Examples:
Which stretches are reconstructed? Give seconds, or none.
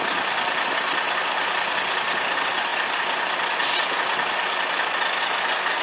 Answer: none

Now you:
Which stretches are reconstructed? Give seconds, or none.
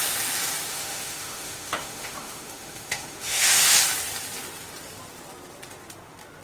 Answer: 0.7-3.8 (autoencoder, DAC-VAE)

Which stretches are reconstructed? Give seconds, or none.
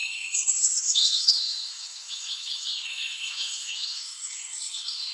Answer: 0.0-5.1 (codec, SNAC)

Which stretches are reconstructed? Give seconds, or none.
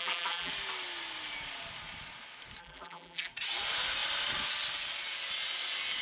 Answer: 0.0-0.5 (vocoder, BigVGAN v2); 2.6-3.3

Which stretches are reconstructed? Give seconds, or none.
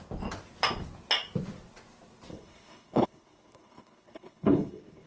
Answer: 2.3-5.1 (codec, HILCodec)